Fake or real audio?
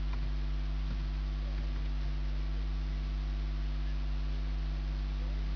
real